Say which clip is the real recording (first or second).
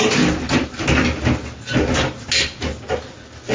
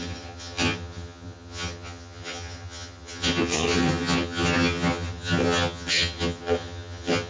first